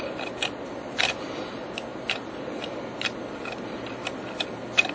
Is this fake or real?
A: real